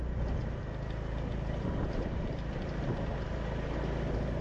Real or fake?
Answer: real